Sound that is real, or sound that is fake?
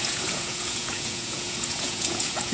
fake